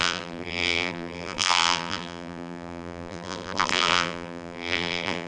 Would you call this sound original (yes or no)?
no